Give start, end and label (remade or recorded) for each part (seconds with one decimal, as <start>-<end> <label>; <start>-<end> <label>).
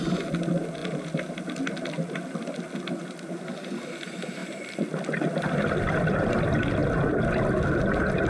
0.0-8.3 recorded